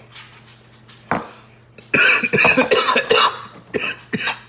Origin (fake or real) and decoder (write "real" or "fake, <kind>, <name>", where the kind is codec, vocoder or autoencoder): real